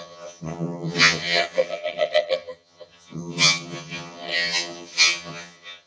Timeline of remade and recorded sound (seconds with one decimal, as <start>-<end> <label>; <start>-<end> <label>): 0.0-5.9 remade